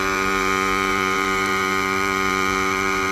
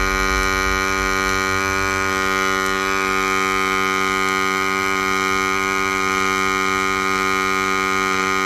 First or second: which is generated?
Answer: first